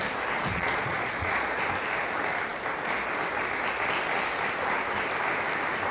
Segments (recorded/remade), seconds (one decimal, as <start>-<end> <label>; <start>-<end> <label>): 0.0-0.5 recorded; 0.5-1.6 remade; 1.6-5.9 recorded